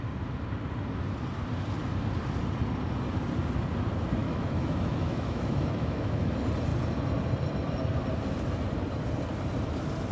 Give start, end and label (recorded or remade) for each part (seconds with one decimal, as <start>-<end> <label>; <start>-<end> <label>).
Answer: 0.0-4.2 recorded; 4.2-6.3 remade; 6.3-10.1 recorded